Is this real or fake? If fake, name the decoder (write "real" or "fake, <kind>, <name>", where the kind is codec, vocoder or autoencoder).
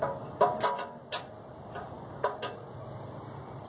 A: real